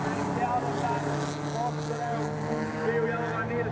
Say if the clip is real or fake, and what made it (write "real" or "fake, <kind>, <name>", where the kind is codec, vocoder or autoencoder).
real